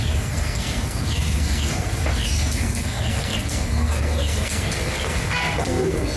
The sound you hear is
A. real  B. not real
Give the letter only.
B